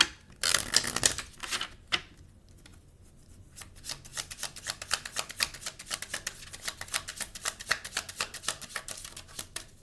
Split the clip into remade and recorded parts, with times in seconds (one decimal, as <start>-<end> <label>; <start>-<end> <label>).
0.0-9.8 recorded